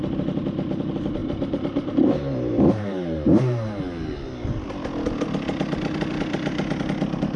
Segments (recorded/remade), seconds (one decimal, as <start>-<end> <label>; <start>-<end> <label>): 0.0-1.2 recorded; 1.2-3.8 remade; 3.8-7.4 recorded